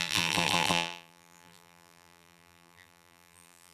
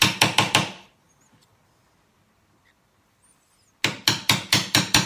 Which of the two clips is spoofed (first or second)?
first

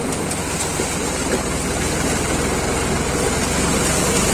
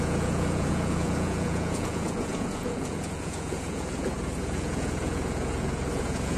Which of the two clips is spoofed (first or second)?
second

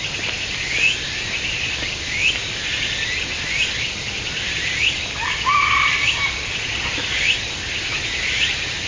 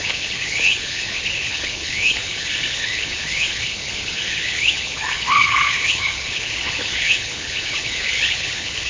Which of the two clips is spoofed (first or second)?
second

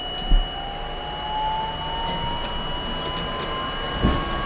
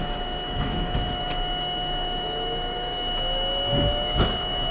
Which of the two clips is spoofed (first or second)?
second